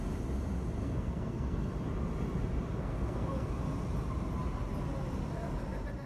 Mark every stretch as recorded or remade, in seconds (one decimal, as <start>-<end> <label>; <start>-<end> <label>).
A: 0.0-0.8 recorded; 0.8-1.7 remade; 1.7-2.8 recorded; 2.8-3.5 remade; 3.5-6.1 recorded